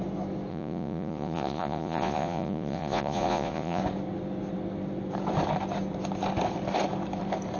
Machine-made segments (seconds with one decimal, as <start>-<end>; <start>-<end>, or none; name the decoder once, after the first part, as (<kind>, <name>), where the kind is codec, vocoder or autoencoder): 0.5-3.8 (vocoder, Vocos)